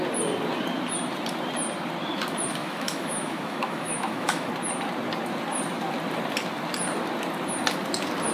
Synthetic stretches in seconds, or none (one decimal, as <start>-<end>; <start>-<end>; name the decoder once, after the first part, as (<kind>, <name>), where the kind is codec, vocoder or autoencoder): 2.6-4.5 (autoencoder, DAC-VAE)